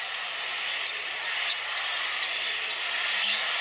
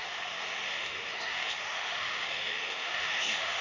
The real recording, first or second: first